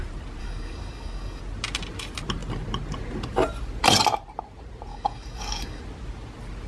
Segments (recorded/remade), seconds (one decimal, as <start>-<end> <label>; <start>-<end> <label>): 0.0-0.4 recorded; 0.4-1.4 remade; 1.4-4.9 recorded; 4.9-5.8 remade; 5.8-6.7 recorded